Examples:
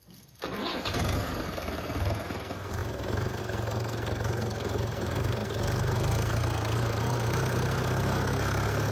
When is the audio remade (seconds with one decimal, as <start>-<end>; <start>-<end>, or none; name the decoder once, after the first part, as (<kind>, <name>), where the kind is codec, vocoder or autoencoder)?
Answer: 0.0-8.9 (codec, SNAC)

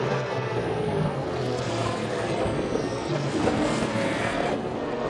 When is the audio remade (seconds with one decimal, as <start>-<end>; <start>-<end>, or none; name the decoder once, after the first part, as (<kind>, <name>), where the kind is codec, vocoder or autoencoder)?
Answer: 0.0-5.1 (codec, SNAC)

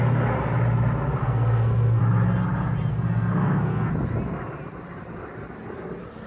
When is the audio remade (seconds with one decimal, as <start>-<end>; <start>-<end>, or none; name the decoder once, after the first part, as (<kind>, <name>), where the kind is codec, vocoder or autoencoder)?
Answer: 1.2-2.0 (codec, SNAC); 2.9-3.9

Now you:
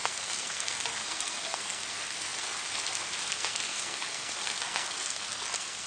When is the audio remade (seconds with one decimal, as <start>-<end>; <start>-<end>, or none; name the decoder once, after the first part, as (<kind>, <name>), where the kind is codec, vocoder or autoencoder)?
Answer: 0.0-5.9 (codec, SNAC)

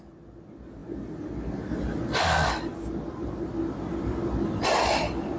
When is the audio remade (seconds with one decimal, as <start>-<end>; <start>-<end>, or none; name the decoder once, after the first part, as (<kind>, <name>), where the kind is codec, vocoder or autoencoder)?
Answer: none

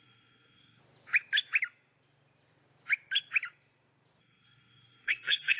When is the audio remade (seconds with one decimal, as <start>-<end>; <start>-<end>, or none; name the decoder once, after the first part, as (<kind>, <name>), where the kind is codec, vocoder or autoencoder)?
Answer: 0.0-0.8 (codec, SNAC); 4.2-5.6

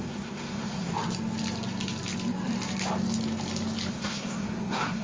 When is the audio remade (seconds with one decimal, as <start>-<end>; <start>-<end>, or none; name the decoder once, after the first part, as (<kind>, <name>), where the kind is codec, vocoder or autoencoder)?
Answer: 0.0-0.9 (codec, SNAC); 3.9-5.0